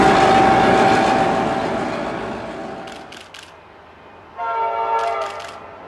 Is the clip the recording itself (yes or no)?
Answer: yes